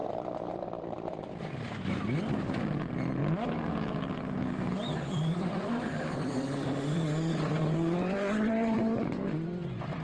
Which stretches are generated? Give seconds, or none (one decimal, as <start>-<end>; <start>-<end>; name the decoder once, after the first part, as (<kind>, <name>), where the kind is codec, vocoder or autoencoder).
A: 0.0-3.2 (vocoder, BigVGAN v2); 3.9-10.0